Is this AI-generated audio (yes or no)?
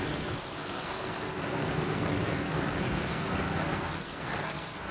yes